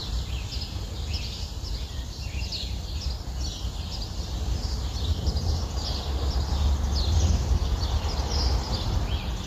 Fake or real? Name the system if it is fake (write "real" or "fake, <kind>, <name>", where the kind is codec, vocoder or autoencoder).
real